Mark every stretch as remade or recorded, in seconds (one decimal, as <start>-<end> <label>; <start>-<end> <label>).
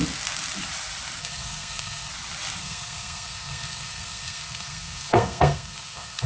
0.0-1.2 recorded; 1.2-2.1 remade; 2.1-2.6 recorded; 2.6-6.3 remade